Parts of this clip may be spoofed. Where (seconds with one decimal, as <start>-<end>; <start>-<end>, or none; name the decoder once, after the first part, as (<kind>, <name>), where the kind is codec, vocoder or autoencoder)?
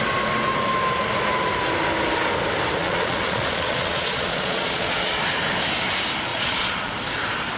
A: 2.8-5.2 (vocoder, Vocos); 6.3-6.9